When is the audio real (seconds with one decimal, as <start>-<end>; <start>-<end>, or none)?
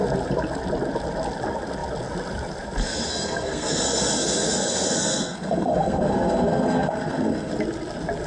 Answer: 0.0-3.1; 7.5-8.3